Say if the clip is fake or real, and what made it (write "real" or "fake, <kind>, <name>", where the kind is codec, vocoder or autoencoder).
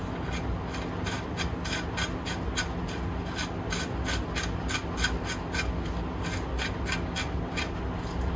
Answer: real